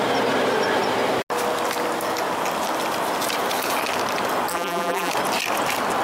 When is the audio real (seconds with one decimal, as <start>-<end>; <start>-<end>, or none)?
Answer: 0.0-4.5; 5.1-6.0